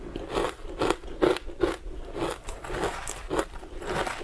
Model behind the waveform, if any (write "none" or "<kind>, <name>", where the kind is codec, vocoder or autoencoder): none